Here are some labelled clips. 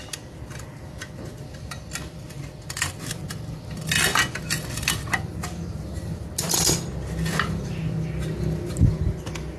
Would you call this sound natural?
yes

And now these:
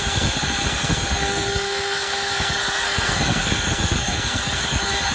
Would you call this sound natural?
no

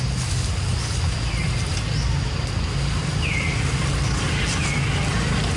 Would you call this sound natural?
yes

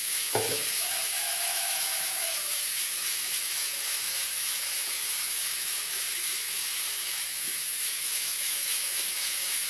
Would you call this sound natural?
no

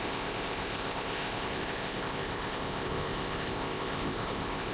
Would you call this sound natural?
no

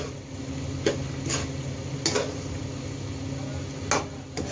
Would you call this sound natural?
yes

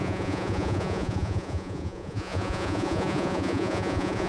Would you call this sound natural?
no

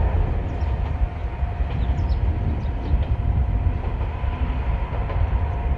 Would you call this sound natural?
yes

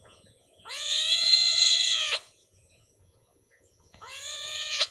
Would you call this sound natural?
no